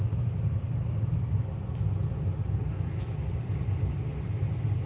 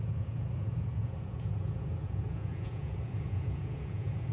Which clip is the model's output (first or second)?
second